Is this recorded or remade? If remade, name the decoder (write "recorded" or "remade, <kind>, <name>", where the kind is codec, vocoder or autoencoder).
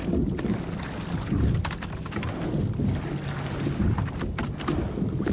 recorded